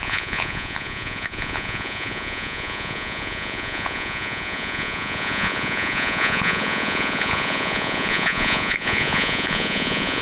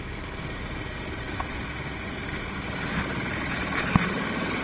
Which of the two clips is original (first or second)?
second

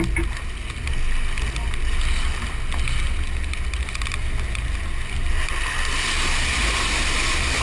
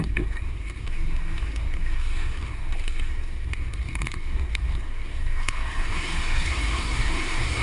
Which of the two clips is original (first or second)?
first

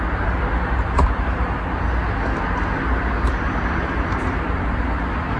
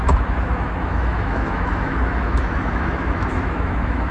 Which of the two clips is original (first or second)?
first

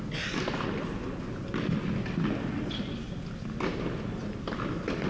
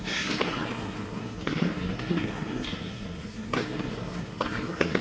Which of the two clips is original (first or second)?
first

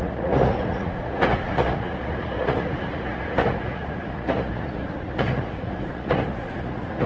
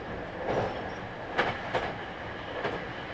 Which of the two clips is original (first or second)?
second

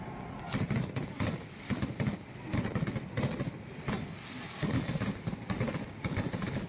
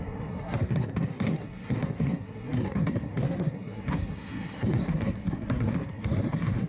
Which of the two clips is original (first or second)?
first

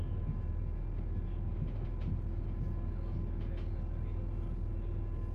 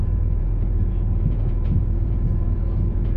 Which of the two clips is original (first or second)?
first